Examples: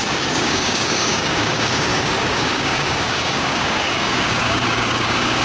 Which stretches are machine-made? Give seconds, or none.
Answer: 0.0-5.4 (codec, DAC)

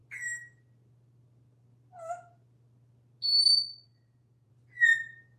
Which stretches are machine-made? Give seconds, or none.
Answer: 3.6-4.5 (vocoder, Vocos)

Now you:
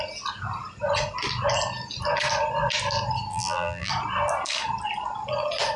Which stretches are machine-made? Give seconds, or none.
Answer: 3.3-3.9 (vocoder, BigVGAN v2)

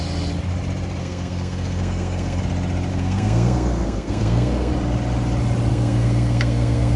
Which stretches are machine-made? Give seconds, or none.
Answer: 1.0-2.4 (codec, SNAC); 2.9-4.7; 5.7-7.0